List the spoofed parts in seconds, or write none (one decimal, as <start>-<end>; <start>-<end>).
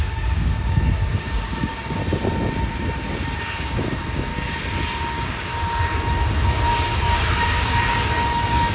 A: 0.0-2.0; 3.4-4.3; 5.0-5.5; 6.7-8.7